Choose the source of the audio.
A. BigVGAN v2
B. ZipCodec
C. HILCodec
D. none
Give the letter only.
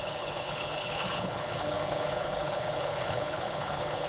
C